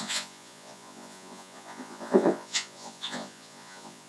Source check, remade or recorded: remade